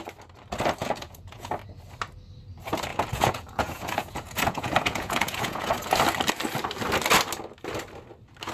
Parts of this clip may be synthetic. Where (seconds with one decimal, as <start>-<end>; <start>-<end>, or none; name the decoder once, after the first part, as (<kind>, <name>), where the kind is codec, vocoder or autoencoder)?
0.8-1.5 (vocoder, Vocos); 2.9-5.7

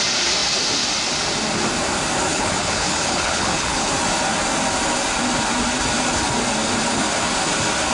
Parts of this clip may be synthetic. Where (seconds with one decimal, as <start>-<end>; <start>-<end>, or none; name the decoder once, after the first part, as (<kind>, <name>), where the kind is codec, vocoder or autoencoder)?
2.3-3.9 (codec, HILCodec)